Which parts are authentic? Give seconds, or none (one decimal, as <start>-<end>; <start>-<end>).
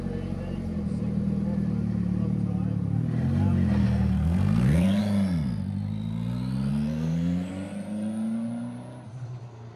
0.0-3.8; 5.0-6.7; 7.5-9.8